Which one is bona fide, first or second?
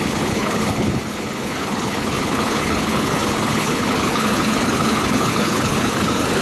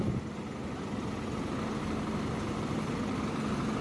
second